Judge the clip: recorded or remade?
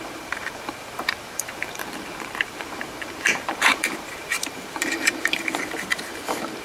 remade